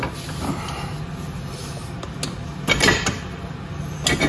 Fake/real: real